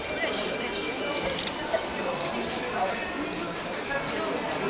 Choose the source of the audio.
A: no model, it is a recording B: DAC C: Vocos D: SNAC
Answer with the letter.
A